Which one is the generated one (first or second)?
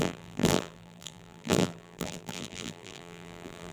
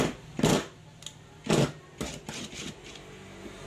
first